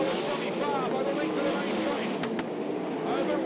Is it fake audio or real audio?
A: real